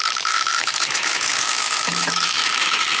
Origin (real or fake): fake